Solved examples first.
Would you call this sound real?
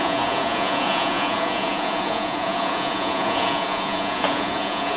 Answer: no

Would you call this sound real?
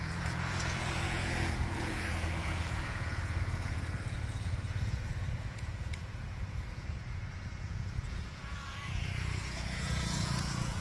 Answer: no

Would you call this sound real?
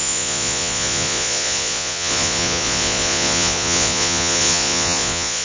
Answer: no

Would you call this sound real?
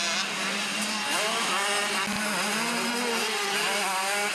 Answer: yes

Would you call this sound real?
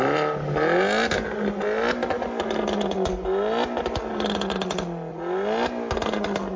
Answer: yes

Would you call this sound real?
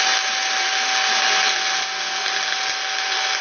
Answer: yes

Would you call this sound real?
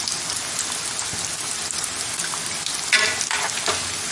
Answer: yes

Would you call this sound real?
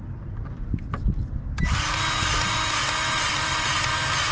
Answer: yes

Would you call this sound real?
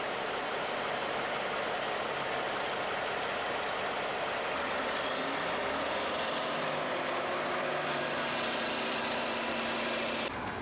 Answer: yes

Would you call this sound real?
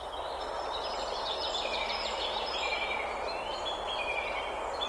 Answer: yes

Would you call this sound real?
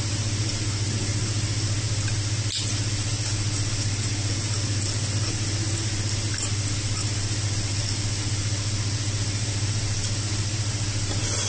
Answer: yes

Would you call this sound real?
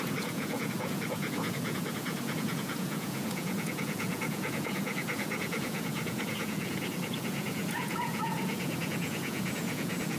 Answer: no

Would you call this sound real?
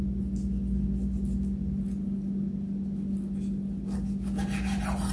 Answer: yes